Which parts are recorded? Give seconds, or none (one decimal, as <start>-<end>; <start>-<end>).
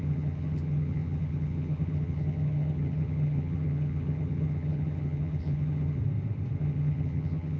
6.0-6.6